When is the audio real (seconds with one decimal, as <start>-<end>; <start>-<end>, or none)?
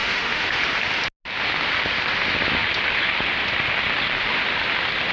0.6-5.1